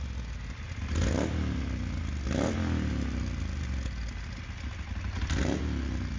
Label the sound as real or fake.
real